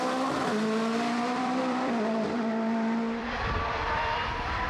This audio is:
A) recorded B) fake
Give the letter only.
B